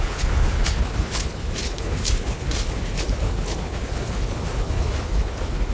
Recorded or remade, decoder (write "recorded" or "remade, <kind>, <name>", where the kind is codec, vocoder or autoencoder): remade, codec, HILCodec